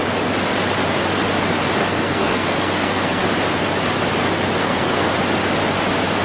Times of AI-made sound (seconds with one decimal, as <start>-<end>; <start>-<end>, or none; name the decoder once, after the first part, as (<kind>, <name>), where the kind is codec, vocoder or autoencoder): 1.8-3.2 (codec, SNAC); 4.6-5.1